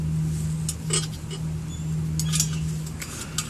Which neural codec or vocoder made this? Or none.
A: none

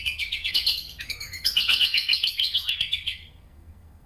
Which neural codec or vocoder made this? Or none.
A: codec, SNAC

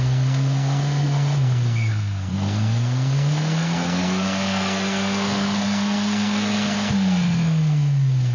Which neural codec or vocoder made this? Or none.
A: codec, SNAC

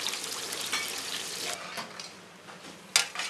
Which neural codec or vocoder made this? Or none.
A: none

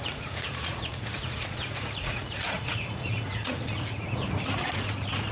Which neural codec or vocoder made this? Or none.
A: vocoder, Vocos